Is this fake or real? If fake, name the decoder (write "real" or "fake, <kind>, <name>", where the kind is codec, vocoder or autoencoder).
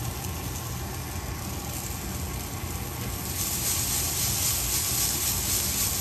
real